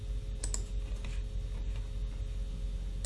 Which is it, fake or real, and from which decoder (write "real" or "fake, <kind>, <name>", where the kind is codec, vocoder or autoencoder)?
real